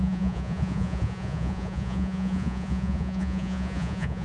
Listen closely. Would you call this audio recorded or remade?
remade